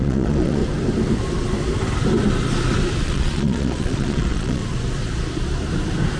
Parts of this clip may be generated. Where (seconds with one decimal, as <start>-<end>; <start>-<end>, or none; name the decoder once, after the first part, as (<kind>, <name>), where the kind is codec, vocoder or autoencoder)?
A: 0.0-0.6 (vocoder, Vocos); 3.0-4.6

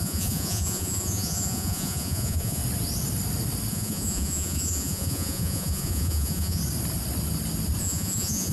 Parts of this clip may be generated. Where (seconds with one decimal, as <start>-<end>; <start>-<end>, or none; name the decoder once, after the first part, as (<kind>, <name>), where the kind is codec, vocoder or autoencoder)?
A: 0.0-2.6 (vocoder, Vocos); 3.7-6.6; 7.8-8.5

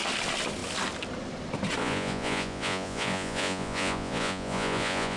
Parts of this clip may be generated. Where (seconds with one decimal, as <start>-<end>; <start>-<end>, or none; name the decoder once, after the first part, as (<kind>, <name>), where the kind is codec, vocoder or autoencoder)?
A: 1.8-5.2 (vocoder, Vocos)

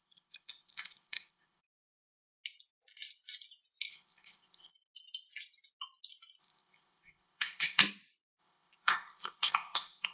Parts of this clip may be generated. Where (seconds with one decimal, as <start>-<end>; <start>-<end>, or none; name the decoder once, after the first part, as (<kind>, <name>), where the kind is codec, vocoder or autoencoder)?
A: 0.0-1.6 (codec, ZipCodec); 3.9-4.7; 6.4-7.8; 8.4-10.1

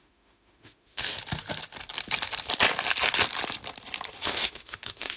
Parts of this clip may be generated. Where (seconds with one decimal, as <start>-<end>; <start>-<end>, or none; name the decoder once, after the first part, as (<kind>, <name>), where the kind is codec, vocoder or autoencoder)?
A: 0.0-1.1 (autoencoder, DAC-VAE); 4.2-5.2